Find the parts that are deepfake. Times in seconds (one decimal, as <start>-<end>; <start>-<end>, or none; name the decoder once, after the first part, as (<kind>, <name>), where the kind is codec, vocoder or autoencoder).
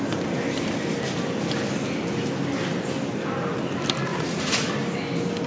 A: 4.1-4.7 (vocoder, Vocos)